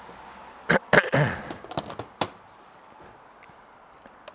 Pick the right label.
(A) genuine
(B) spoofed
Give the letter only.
A